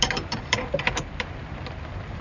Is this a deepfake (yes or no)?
yes